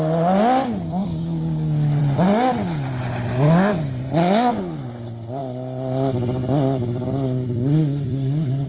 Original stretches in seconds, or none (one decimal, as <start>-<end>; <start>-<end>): 0.0-1.0; 2.0-8.7